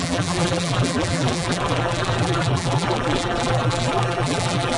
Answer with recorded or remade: remade